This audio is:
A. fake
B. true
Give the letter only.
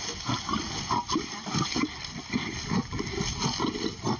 B